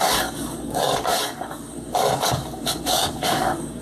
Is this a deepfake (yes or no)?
yes